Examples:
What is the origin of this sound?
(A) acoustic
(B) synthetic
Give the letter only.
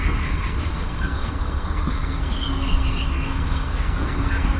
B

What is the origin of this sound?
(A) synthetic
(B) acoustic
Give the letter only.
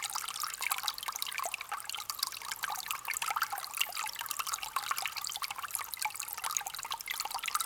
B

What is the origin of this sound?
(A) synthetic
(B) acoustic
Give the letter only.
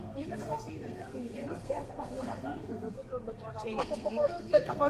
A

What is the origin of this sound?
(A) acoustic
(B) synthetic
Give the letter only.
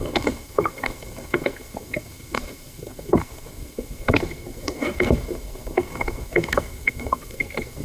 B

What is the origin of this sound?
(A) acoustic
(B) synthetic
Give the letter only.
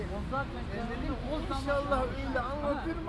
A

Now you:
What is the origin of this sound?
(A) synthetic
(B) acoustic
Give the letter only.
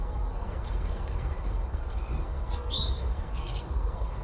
A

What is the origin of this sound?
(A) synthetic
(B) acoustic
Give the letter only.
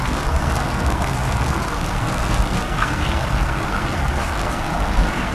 A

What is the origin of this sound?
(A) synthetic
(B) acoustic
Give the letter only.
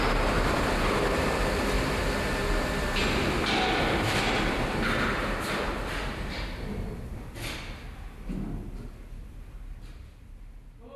B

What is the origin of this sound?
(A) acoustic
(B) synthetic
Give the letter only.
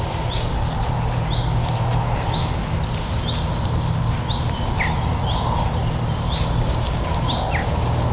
A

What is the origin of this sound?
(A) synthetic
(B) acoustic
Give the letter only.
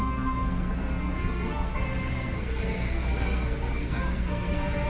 A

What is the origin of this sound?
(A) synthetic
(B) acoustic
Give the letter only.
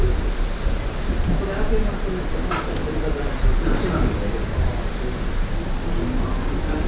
B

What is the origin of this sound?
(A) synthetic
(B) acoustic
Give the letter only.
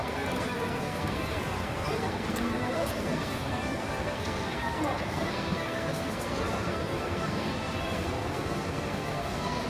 A